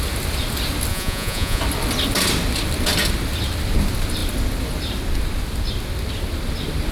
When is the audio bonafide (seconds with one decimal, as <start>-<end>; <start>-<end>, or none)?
0.0-0.9; 1.6-6.9